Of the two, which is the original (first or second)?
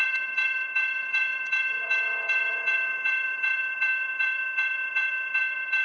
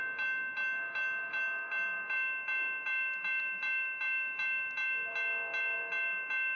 second